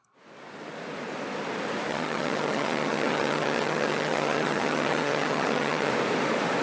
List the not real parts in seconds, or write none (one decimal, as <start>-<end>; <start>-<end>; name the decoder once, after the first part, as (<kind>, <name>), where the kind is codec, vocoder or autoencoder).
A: 1.9-5.9 (vocoder, HiFi-GAN)